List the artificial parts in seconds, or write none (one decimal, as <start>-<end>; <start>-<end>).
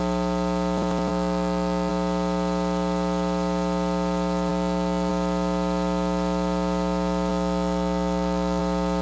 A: 1.1-1.9; 4.5-5.1; 7.3-8.6